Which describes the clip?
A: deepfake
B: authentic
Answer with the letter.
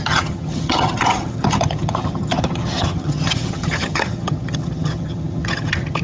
A